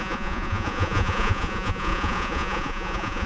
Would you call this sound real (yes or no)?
no